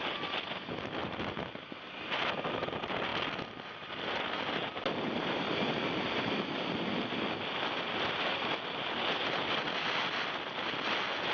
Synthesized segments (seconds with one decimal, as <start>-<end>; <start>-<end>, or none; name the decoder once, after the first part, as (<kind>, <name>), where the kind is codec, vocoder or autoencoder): none

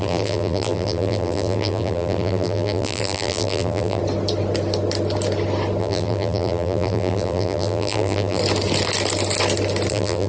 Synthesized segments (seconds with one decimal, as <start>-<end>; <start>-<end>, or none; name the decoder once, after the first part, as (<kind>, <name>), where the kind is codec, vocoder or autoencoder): 0.0-4.0 (vocoder, BigVGAN v2); 5.8-8.4; 9.9-10.3